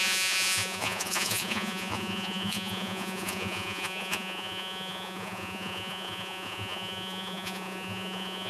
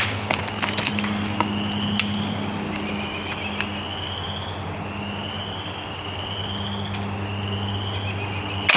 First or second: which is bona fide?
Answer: second